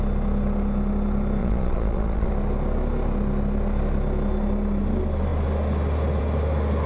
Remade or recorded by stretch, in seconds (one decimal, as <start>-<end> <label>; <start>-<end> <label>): 0.0-1.4 recorded; 1.4-2.3 remade; 2.3-6.9 recorded

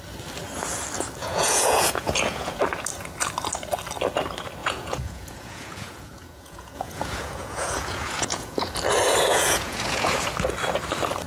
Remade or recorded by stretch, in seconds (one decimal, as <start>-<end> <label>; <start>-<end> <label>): 0.0-1.2 recorded; 1.2-2.6 remade; 2.6-4.6 recorded; 4.6-8.7 remade; 8.7-9.3 recorded; 9.3-10.2 remade; 10.2-11.3 recorded

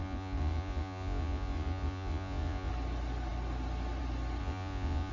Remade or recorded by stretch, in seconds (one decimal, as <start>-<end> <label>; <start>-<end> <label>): 0.0-2.7 remade; 2.7-4.4 recorded; 4.4-5.1 remade

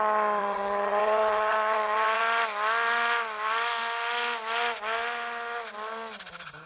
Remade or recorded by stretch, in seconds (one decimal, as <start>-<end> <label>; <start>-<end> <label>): 0.0-0.4 recorded; 0.4-2.2 remade; 2.2-6.7 recorded

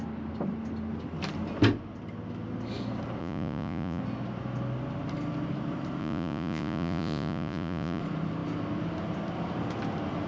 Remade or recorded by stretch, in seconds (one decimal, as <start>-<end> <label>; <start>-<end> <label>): 0.0-3.2 recorded; 3.2-4.0 remade; 4.0-6.0 recorded; 6.0-8.0 remade; 8.0-10.3 recorded

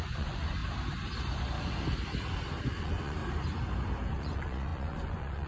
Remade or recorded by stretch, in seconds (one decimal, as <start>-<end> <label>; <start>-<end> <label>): 0.0-0.6 remade; 0.6-2.8 recorded; 2.8-3.2 remade; 3.2-4.1 recorded; 4.1-5.5 remade

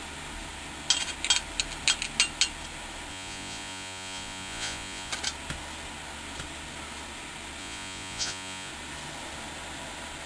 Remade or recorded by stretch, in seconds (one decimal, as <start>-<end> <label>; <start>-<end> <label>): 0.0-3.1 recorded; 3.1-5.1 remade; 5.1-7.6 recorded; 7.6-8.7 remade; 8.7-10.3 recorded

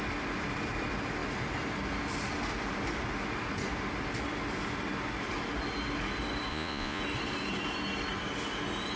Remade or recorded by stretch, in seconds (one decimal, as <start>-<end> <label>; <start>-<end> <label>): 0.0-6.5 recorded; 6.5-7.0 remade; 7.0-9.0 recorded